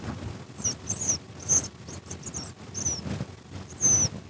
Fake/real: real